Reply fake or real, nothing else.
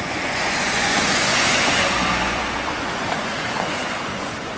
fake